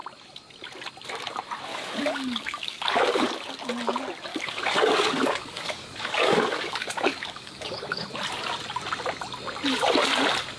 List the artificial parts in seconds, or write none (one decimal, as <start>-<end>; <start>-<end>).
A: 1.7-3.3; 4.3-8.1